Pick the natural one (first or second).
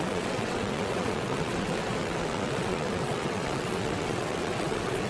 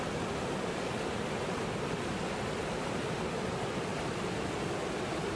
second